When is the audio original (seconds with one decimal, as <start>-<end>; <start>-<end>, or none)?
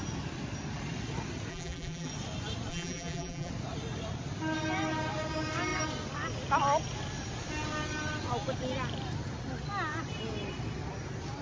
0.0-1.5; 2.1-2.7; 3.5-11.4